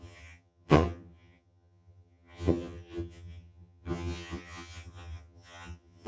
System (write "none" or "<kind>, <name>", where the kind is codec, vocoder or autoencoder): vocoder, HiFi-GAN